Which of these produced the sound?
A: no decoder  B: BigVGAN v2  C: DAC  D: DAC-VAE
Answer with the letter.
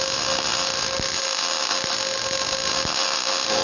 A